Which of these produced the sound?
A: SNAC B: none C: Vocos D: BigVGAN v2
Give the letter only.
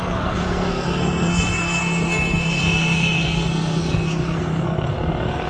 A